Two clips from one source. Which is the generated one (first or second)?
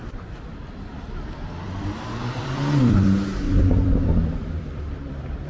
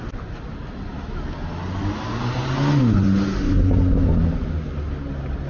first